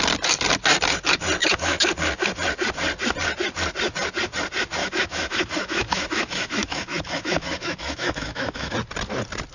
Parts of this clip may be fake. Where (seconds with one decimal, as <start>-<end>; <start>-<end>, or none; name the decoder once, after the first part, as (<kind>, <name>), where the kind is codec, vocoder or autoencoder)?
1.4-1.9 (autoencoder, DAC-VAE); 4.8-8.7